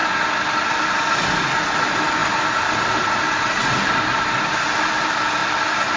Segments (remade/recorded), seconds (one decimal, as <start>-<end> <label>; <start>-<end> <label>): 0.0-6.0 recorded